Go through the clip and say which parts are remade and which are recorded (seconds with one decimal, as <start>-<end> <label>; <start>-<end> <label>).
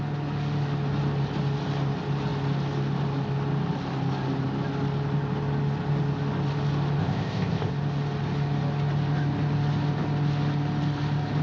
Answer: 0.0-7.0 recorded; 7.0-7.7 remade; 7.7-11.4 recorded